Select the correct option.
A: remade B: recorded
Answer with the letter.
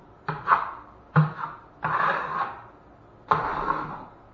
B